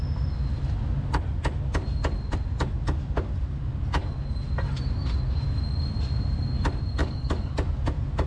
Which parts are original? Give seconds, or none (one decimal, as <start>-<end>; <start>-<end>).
0.0-7.0; 7.5-8.3